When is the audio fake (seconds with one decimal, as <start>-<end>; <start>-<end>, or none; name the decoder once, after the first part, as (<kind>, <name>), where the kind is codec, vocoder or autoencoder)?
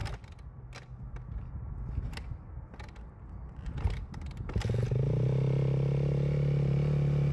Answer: none